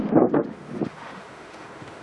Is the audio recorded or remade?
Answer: remade